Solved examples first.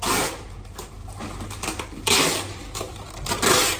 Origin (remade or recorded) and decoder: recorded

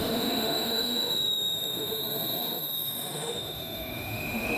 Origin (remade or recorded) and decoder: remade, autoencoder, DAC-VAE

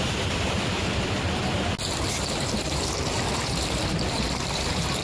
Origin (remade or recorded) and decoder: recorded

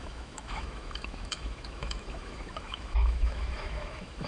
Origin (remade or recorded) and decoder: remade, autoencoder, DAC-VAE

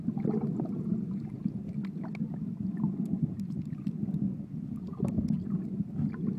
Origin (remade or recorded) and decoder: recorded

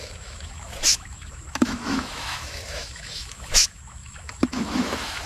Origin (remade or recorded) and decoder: remade, autoencoder, DAC-VAE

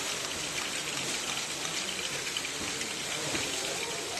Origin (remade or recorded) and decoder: recorded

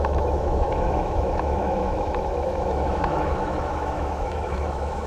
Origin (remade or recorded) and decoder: remade, autoencoder, DAC-VAE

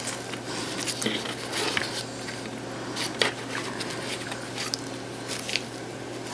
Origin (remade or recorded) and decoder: recorded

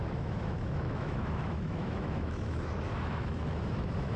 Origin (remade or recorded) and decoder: remade, autoencoder, DAC-VAE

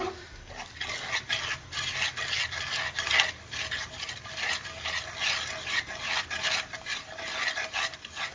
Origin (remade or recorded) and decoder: recorded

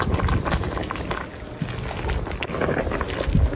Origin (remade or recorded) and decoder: recorded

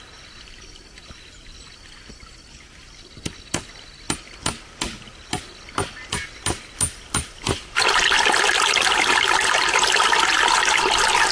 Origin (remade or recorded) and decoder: recorded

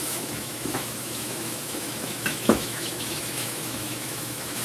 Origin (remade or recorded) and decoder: remade, autoencoder, DAC-VAE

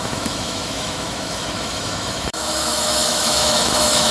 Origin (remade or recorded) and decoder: remade, autoencoder, DAC-VAE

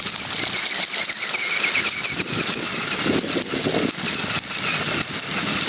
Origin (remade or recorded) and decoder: recorded